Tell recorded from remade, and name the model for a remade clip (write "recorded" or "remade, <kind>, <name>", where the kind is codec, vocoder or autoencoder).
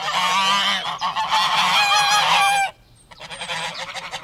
recorded